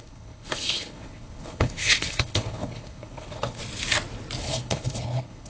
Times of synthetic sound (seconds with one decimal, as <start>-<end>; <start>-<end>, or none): 0.0-3.6; 4.4-5.5